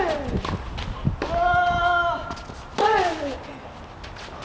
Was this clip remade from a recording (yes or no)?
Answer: no